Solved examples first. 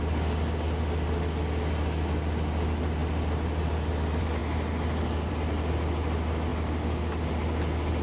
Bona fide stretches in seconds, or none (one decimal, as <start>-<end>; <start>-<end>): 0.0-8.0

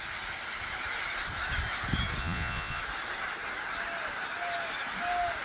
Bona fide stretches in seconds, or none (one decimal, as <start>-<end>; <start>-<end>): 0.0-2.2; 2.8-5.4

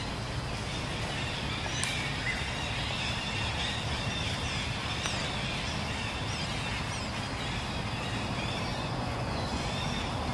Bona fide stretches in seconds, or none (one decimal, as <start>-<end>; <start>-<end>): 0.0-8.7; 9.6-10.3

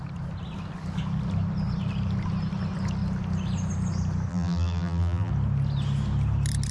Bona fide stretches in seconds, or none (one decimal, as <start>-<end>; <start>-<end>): 0.0-4.3; 5.3-6.7